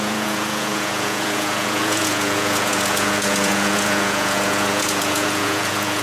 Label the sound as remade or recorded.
remade